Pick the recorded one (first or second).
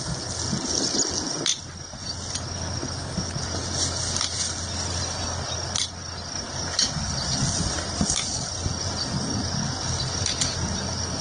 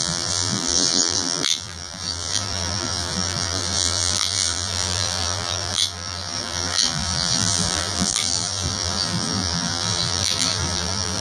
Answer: first